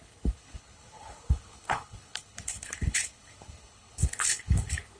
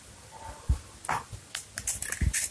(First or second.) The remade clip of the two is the first